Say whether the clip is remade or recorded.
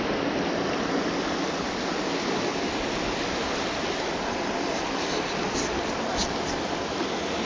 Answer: recorded